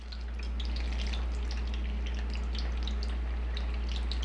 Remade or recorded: recorded